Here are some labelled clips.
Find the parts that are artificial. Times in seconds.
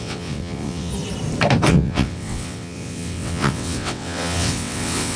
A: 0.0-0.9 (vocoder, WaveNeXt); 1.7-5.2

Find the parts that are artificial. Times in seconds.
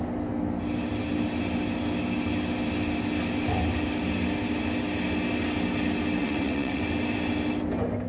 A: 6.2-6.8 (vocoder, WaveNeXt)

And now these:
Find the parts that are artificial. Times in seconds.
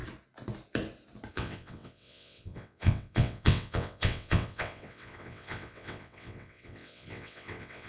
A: 1.3-7.9 (vocoder, WaveNeXt)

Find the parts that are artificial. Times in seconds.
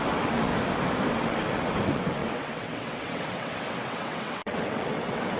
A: 0.0-0.5 (vocoder, WaveNeXt); 1.1-5.4